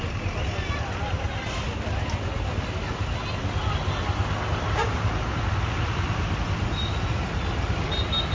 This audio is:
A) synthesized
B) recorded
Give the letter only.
B